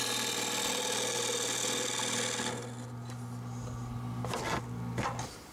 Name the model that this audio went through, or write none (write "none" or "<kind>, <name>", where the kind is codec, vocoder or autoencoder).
none